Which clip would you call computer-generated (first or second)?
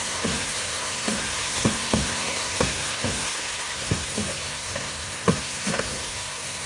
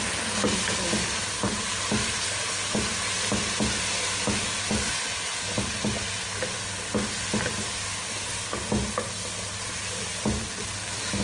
first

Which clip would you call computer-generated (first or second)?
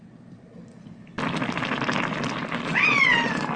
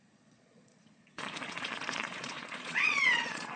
second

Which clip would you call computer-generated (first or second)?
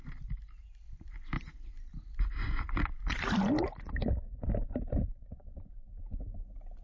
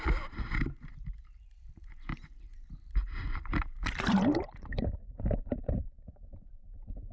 second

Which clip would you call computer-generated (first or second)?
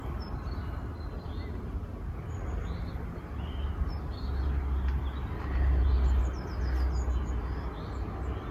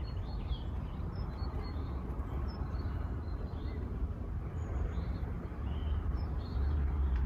second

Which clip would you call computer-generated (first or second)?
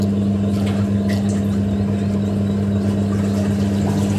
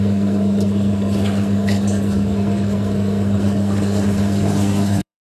second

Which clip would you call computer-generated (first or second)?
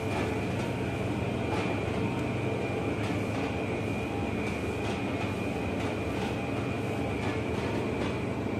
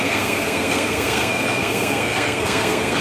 second